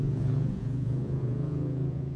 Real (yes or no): no